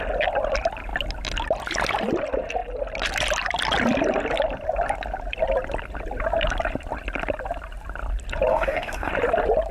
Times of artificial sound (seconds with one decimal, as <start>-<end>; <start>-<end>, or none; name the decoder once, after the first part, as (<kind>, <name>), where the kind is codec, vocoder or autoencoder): 8.5-9.1 (autoencoder, DAC-VAE)